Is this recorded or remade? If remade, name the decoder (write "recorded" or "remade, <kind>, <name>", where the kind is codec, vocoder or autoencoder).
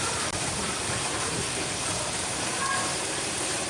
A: remade, vocoder, BigVGAN v2